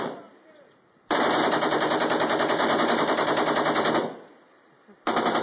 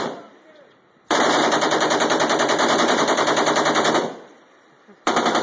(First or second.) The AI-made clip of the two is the second